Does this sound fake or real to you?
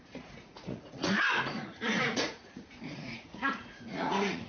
fake